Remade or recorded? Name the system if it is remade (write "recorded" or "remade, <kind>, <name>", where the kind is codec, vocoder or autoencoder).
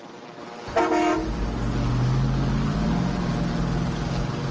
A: recorded